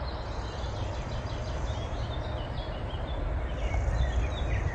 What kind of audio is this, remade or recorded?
recorded